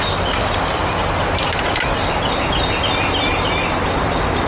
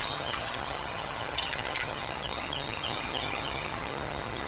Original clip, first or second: first